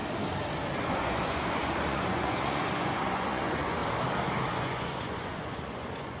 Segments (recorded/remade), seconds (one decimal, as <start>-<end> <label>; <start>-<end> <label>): 0.0-0.8 recorded; 0.8-3.8 remade; 3.8-4.6 recorded; 4.6-6.2 remade